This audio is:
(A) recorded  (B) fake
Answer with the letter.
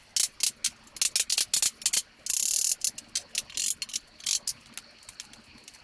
A